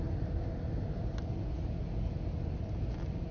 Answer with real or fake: real